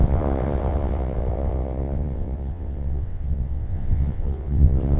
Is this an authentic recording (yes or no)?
no